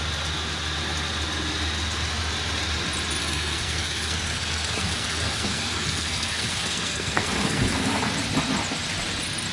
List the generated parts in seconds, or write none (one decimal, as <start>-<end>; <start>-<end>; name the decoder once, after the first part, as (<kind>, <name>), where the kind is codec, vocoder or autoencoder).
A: 3.2-8.1 (codec, SNAC)